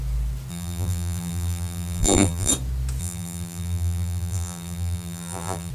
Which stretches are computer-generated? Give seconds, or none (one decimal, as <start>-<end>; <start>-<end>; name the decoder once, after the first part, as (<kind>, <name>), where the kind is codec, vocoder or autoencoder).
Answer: 0.5-2.5 (vocoder, BigVGAN v2); 3.0-5.7